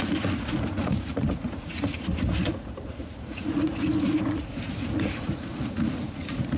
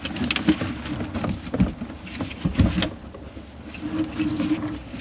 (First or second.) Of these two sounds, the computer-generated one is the first